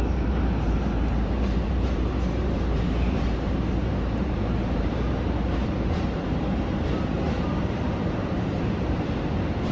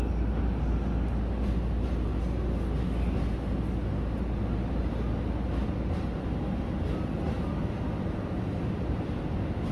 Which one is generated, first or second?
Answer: first